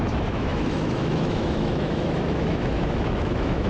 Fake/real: fake